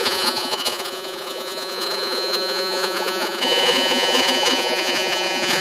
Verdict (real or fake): fake